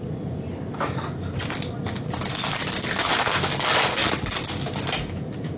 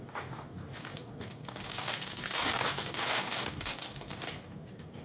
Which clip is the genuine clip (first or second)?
first